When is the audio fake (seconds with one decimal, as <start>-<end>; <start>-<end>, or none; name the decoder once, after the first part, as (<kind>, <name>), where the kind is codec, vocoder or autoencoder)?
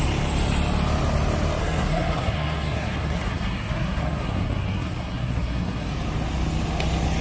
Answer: 1.6-5.9 (codec, SNAC)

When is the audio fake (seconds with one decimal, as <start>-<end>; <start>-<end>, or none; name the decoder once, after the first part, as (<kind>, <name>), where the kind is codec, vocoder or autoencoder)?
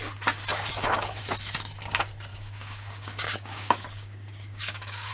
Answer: 0.5-1.2 (codec, DAC); 2.3-5.1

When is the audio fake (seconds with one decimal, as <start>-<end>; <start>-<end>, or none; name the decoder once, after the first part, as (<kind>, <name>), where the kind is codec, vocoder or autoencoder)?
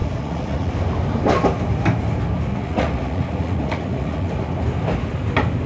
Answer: 0.0-0.7 (vocoder, Vocos); 2.5-4.3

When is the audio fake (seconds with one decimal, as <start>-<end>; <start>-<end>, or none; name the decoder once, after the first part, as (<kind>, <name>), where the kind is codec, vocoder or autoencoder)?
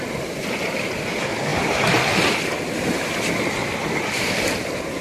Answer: 1.5-2.7 (vocoder, BigVGAN v2); 3.6-4.1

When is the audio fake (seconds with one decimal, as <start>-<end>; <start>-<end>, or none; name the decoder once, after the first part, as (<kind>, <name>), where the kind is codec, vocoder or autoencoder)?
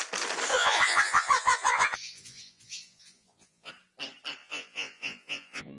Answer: 0.5-3.7 (vocoder, Vocos); 4.4-5.8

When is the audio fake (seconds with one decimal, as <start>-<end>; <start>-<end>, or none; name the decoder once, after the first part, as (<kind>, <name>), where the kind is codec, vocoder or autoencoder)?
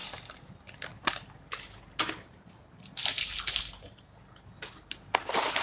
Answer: none